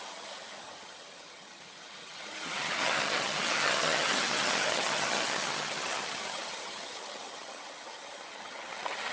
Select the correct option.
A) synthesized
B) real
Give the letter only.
A